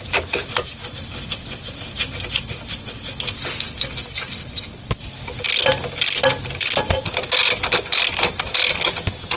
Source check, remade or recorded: recorded